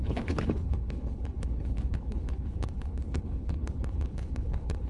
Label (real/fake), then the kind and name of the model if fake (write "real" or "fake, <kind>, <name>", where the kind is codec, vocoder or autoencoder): fake, codec, HILCodec